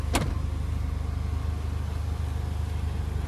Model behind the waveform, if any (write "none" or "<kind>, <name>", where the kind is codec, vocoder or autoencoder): none